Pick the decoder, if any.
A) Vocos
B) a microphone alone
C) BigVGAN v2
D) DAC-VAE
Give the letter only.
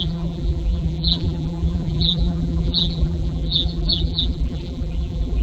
C